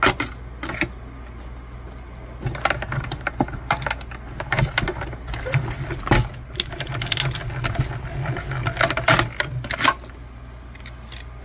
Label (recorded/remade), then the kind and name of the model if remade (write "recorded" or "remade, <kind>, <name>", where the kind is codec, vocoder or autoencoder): recorded